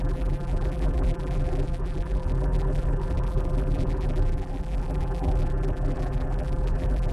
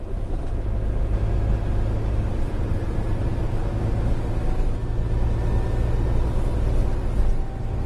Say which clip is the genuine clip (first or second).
second